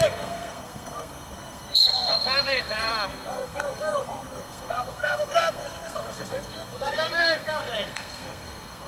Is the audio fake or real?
fake